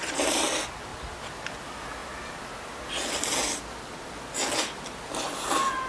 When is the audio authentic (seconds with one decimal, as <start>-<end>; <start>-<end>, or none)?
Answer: 0.0-5.9